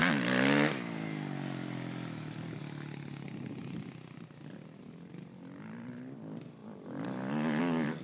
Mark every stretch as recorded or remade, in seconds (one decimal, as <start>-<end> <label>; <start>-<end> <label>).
0.0-8.0 recorded